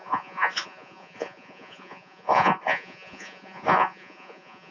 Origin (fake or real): fake